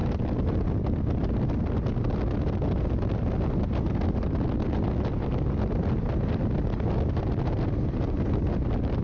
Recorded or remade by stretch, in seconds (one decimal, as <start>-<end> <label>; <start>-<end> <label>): 0.0-9.0 recorded